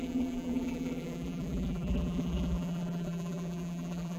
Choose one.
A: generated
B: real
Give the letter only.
A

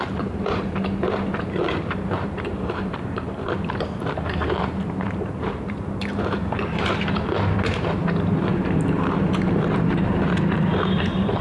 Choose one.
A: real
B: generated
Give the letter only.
B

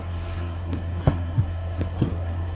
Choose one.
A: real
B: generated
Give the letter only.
B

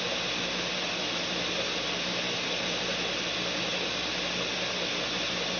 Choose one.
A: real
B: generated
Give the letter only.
A